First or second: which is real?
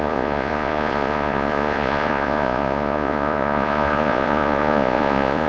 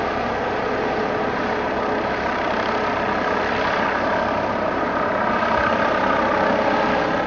second